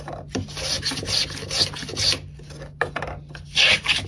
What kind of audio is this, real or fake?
real